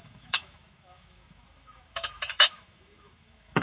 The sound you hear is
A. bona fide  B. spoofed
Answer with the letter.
B